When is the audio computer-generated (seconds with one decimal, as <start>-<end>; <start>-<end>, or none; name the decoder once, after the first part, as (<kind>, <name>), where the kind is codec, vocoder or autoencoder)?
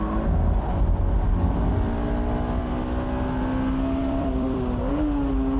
4.0-4.9 (vocoder, BigVGAN v2)